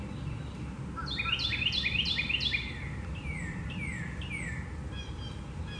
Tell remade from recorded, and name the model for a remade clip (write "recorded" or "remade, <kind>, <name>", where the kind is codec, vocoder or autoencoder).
recorded